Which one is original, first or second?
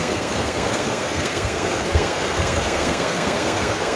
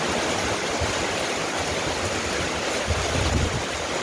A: second